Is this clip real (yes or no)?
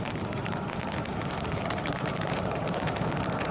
no